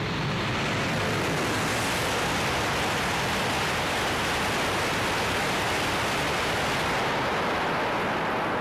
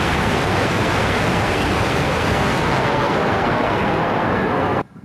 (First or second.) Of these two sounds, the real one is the first